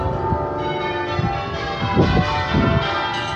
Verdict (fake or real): real